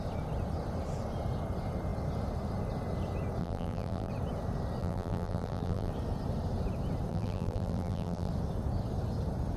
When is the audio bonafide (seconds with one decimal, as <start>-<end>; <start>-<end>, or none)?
0.0-3.4; 4.1-4.8; 5.9-7.1; 8.3-9.6